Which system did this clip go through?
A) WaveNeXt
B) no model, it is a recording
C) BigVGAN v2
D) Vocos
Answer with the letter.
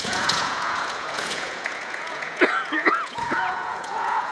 D